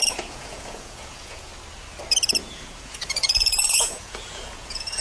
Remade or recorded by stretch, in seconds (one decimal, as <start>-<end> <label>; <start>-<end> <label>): 0.0-1.5 remade; 1.5-2.4 recorded; 2.4-5.0 remade